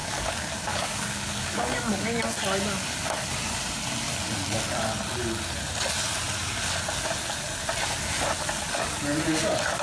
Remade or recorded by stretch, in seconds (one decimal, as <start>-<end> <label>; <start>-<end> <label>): 0.0-2.2 remade; 2.2-9.8 recorded